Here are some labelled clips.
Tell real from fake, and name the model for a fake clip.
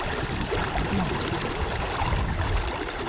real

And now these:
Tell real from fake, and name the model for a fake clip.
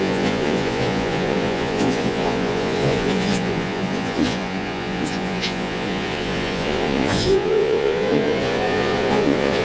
fake, vocoder, Vocos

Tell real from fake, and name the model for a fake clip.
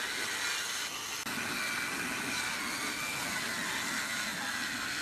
real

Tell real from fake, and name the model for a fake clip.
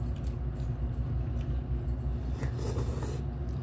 real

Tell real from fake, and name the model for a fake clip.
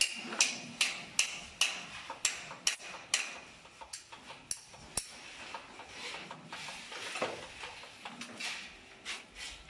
real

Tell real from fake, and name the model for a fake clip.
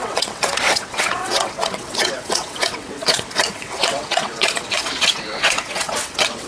fake, vocoder, WaveNeXt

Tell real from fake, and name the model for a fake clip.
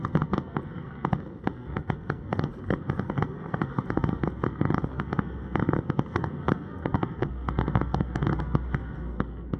fake, codec, SNAC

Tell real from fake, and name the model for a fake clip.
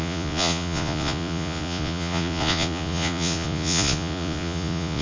fake, vocoder, Vocos